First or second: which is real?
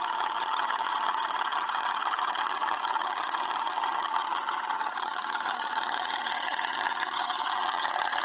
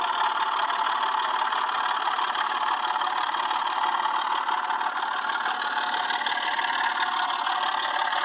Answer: second